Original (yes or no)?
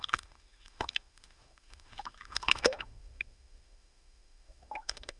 no